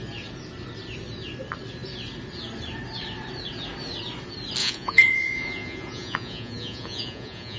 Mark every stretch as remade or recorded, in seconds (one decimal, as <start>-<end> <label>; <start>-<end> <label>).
0.0-4.6 recorded; 4.6-7.6 remade